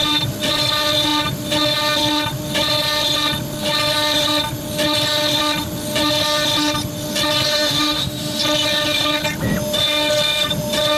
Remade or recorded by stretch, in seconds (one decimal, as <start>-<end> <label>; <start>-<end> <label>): 0.0-7.5 recorded; 7.5-8.4 remade; 8.4-11.0 recorded